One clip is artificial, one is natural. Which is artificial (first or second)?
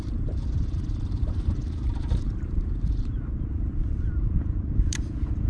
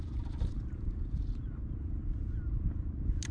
first